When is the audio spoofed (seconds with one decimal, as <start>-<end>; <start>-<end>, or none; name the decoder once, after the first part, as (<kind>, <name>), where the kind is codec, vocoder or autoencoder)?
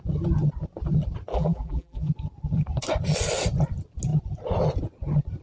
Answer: 1.3-2.1 (vocoder, BigVGAN v2)